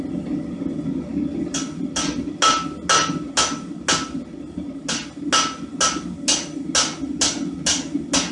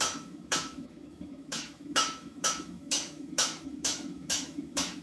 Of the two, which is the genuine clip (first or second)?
first